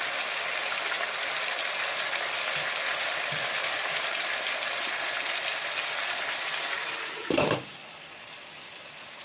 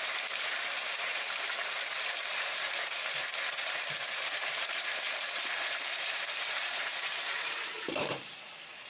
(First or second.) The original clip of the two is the first